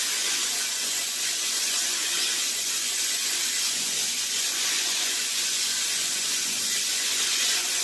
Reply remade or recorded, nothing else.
remade